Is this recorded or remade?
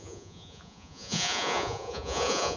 remade